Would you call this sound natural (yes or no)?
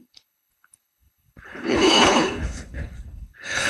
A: no